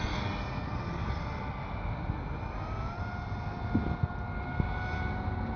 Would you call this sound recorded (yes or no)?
yes